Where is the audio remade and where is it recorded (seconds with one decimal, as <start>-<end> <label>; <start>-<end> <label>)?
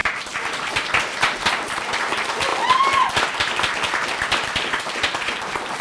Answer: 0.0-0.7 remade; 0.7-2.5 recorded; 2.5-3.7 remade; 3.7-5.8 recorded